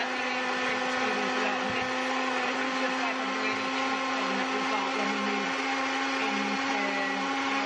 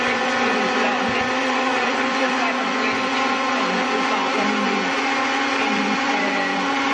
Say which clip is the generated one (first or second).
second